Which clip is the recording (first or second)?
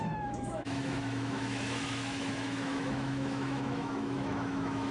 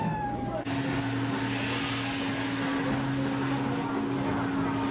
second